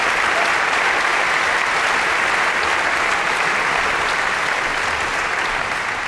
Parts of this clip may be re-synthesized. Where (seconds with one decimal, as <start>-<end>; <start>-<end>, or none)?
none